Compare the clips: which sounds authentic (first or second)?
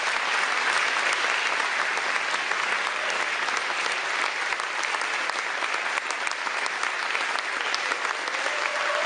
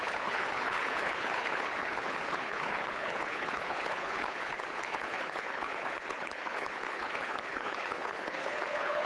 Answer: first